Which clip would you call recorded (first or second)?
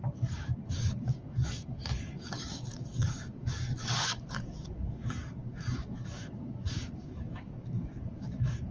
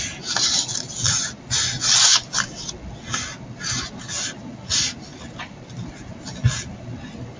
second